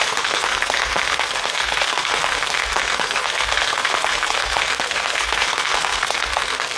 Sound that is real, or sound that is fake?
fake